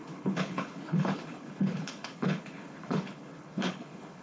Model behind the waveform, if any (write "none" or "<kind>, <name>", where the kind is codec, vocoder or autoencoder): codec, HILCodec